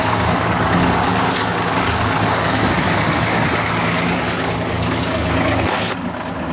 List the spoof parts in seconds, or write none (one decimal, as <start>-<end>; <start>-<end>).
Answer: 0.0-6.5